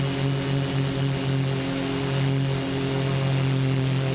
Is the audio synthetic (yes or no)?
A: no